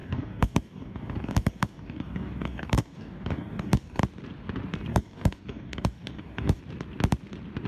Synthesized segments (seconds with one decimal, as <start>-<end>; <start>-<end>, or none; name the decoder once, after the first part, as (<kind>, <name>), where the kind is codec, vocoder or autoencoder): 0.0-4.0 (codec, DAC); 4.9-6.6